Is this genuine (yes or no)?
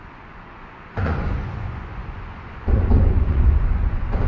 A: no